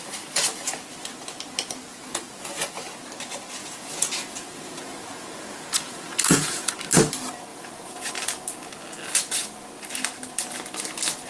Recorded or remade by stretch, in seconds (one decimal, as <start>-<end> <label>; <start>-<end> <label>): 0.0-1.9 recorded; 1.9-2.8 remade; 2.8-3.6 recorded; 3.6-6.7 remade; 6.7-7.5 recorded; 7.5-8.1 remade; 8.1-11.3 recorded